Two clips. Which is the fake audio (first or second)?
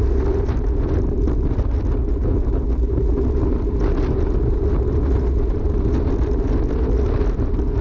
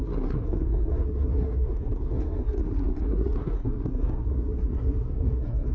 second